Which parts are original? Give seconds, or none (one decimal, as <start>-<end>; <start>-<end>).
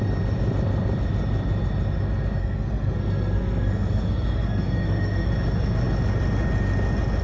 0.0-2.4; 5.3-7.2